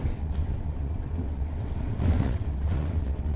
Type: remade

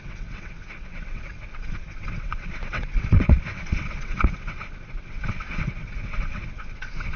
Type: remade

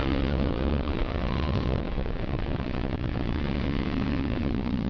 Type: remade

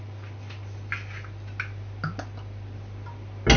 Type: recorded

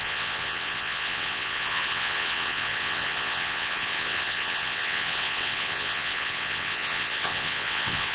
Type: remade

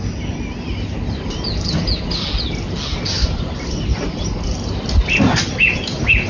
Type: recorded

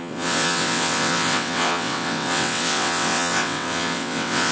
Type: remade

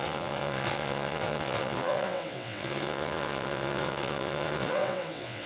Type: remade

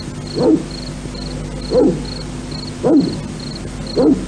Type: recorded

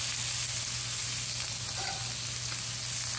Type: recorded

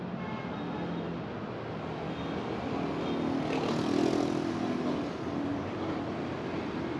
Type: recorded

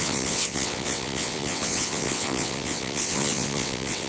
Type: remade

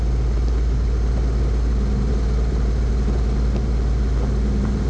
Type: recorded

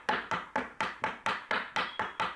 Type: recorded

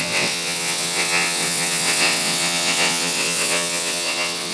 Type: remade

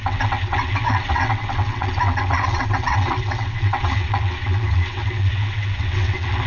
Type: remade